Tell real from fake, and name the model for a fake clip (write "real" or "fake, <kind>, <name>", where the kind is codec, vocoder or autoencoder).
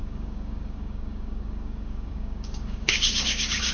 fake, codec, DAC